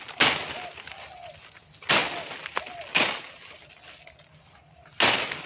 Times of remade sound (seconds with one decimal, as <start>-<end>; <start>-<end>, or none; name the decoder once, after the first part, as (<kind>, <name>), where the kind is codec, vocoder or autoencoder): none